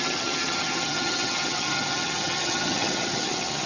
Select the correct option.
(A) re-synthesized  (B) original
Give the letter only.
A